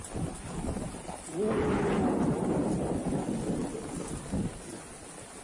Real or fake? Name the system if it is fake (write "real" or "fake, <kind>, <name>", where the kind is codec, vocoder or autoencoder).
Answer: real